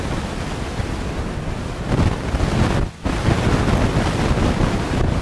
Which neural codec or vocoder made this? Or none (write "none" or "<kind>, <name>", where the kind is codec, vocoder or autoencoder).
none